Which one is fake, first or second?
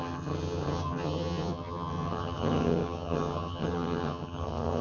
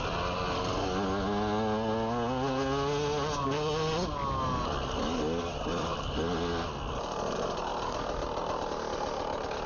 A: first